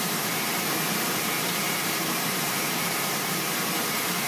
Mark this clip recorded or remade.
remade